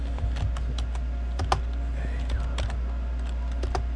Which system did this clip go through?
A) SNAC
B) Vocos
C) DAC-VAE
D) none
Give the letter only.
D